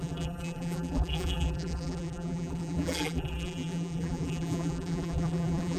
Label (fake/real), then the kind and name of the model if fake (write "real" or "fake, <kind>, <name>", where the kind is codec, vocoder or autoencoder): fake, vocoder, BigVGAN v2